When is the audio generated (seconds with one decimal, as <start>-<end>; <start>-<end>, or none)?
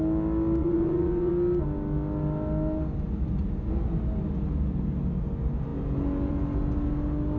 0.6-1.3